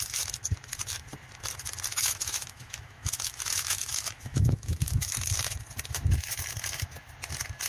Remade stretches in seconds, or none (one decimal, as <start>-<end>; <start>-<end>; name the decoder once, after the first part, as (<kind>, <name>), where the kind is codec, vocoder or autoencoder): 1.9-5.1 (autoencoder, DAC-VAE)